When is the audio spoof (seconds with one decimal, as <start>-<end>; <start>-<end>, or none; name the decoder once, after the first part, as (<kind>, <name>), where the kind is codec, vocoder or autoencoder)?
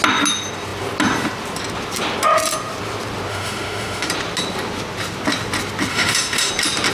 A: 3.3-4.1 (autoencoder, DAC-VAE); 5.9-6.5